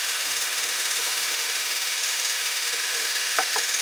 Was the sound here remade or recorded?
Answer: remade